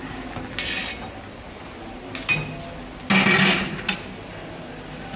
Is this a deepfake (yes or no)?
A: no